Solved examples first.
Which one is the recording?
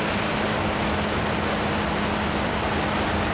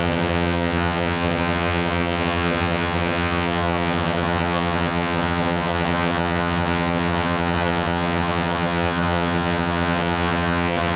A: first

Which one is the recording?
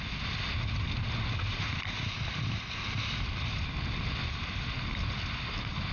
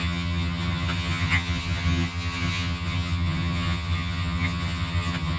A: first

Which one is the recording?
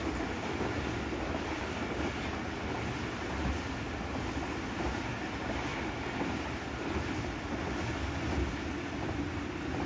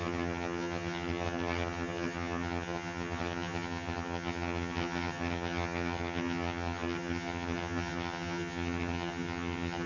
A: first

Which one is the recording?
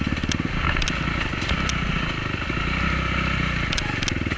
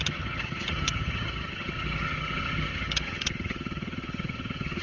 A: first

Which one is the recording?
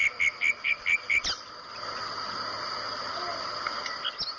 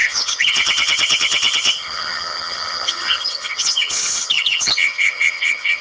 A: first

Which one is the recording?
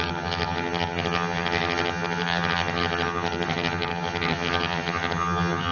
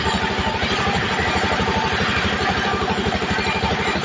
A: second